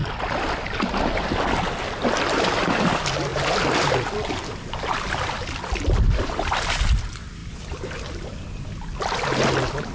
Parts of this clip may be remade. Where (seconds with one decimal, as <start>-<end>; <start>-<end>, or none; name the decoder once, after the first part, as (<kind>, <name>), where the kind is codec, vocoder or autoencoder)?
3.3-4.8 (vocoder, BigVGAN v2); 7.4-9.0